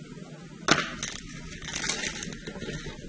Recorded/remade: recorded